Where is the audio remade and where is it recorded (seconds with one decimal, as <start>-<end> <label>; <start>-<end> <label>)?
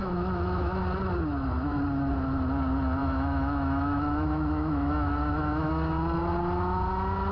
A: 0.0-0.8 remade; 0.8-1.3 recorded; 1.3-1.8 remade; 1.8-3.0 recorded; 3.0-5.7 remade; 5.7-7.3 recorded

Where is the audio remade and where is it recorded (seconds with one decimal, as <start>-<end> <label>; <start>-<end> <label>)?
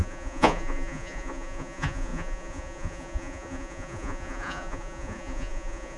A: 0.0-6.0 remade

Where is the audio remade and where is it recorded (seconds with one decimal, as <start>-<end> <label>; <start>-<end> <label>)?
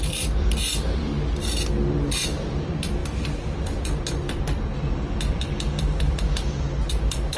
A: 0.0-1.1 remade; 1.1-1.9 recorded; 1.9-7.4 remade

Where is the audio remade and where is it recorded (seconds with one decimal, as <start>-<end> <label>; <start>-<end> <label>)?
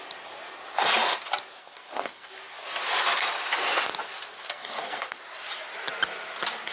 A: 0.0-1.6 recorded; 1.6-2.3 remade; 2.3-4.3 recorded; 4.3-5.2 remade; 5.2-6.7 recorded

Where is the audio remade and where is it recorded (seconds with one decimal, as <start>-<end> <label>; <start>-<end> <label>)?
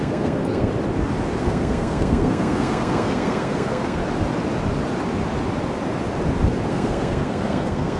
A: 0.0-0.7 remade; 0.7-1.4 recorded; 1.4-4.0 remade; 4.0-6.7 recorded; 6.7-8.0 remade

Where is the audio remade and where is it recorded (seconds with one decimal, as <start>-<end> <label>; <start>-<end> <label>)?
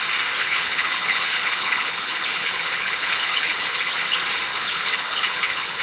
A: 0.0-0.4 recorded; 0.4-3.9 remade; 3.9-4.5 recorded; 4.5-5.8 remade